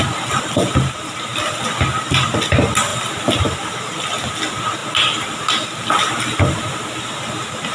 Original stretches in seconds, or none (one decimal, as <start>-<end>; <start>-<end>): 0.0-2.9; 4.3-4.8; 7.0-7.7